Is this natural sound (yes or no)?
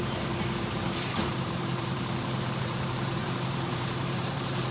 no